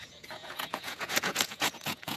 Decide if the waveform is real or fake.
fake